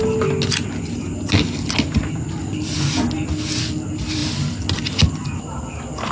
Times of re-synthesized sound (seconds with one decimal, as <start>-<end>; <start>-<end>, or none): none